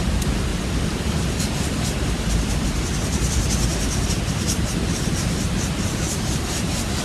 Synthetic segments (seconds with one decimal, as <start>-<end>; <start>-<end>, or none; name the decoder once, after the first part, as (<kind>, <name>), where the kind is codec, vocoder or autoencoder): 0.5-1.4 (vocoder, BigVGAN v2); 3.7-5.4